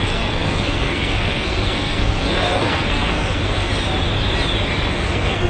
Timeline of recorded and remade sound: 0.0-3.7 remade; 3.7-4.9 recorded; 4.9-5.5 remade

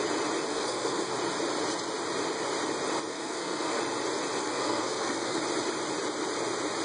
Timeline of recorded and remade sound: 0.0-0.5 recorded; 0.5-1.1 remade; 1.1-3.1 recorded; 3.1-3.8 remade; 3.8-4.4 recorded; 4.4-5.4 remade; 5.4-6.8 recorded

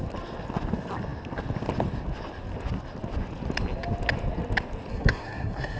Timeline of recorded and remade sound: 0.0-4.9 recorded; 4.9-5.8 remade

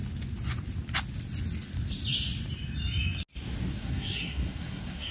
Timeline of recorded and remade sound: 0.0-3.7 recorded; 3.7-5.1 remade

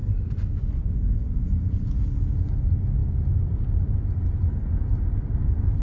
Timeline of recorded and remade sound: 0.0-5.8 recorded

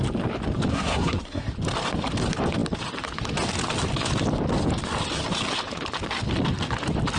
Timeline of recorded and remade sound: 0.0-0.7 recorded; 0.7-1.5 remade; 1.5-7.2 recorded